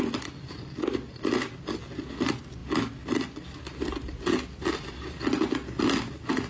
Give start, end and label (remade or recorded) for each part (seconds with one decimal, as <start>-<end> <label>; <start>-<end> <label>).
0.0-6.5 recorded